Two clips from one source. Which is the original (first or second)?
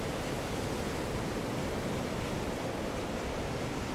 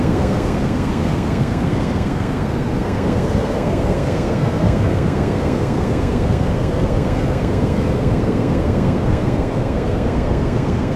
first